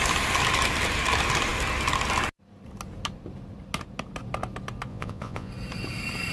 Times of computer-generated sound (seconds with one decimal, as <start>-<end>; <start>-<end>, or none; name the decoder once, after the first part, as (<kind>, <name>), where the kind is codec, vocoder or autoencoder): 4.9-5.5 (vocoder, Vocos)